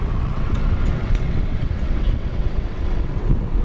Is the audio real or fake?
fake